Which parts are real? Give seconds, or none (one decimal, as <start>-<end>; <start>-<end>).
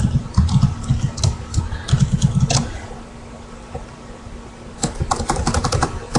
0.0-0.9; 1.6-6.2